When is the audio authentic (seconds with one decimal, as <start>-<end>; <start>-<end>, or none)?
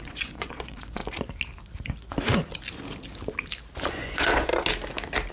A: 1.0-3.9; 4.5-5.3